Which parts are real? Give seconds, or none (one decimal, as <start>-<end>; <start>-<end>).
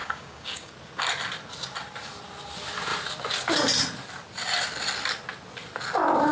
0.7-6.3